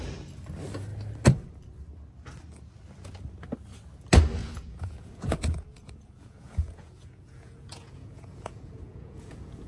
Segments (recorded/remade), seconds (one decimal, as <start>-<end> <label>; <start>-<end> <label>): 0.0-4.4 recorded; 4.4-9.7 remade